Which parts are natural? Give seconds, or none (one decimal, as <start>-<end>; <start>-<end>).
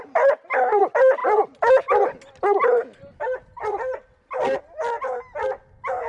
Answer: 0.0-6.1